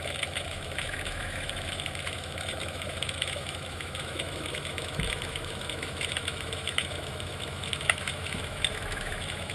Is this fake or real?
fake